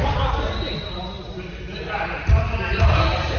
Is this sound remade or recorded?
recorded